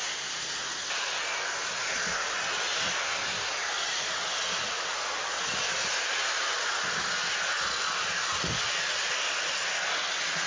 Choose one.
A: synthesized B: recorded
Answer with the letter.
B